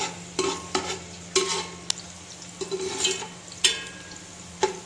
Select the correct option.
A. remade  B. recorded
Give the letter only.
B